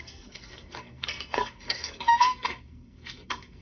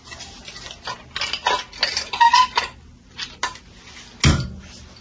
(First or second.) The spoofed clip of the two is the first